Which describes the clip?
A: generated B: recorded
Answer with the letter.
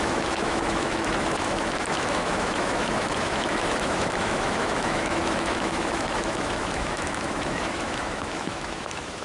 A